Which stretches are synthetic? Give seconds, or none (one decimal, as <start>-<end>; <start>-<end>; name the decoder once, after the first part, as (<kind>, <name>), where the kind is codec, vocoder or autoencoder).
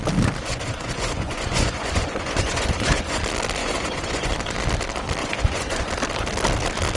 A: 0.4-3.2 (vocoder, Vocos); 3.6-4.3; 5.2-5.9